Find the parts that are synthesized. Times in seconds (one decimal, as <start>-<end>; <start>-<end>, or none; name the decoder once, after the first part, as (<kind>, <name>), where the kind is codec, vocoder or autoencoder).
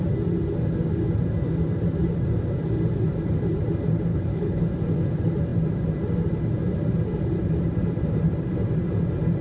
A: 4.1-4.6 (codec, HILCodec)